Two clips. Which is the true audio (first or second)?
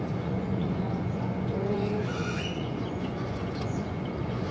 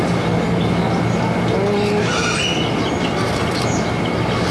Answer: second